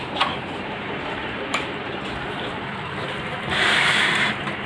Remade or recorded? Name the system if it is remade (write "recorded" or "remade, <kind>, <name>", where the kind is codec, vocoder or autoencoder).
remade, vocoder, BigVGAN v2